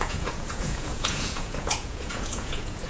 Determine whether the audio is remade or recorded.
remade